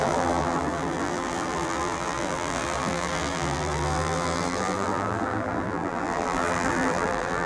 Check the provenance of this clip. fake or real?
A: fake